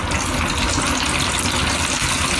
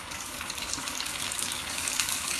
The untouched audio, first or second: first